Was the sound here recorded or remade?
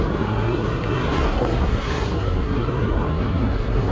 remade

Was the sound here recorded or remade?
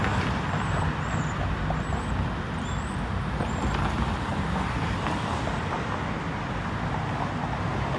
recorded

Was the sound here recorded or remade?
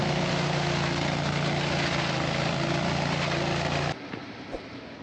recorded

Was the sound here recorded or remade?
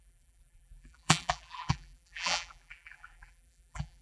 remade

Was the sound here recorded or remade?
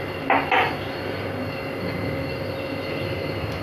recorded